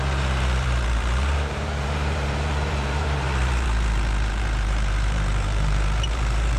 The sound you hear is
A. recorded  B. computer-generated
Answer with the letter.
B